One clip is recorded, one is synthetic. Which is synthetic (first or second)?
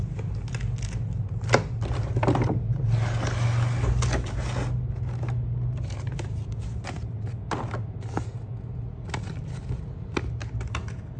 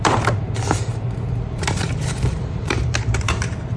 second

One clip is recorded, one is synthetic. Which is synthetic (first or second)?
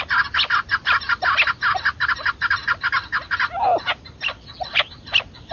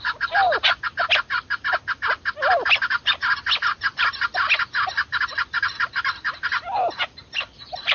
second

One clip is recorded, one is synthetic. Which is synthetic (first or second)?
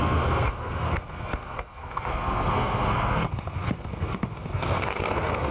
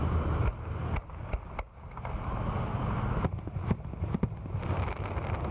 first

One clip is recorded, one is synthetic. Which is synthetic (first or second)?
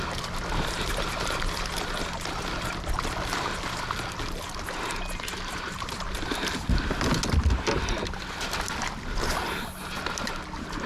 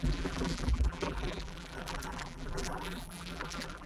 second